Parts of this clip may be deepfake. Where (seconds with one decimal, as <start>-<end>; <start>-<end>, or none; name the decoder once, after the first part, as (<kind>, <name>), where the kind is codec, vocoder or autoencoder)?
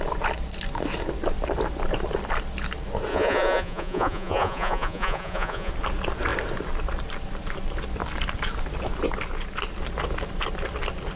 3.1-5.7 (vocoder, Vocos)